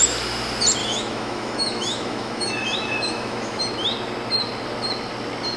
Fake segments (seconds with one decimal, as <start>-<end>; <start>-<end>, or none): 0.8-3.6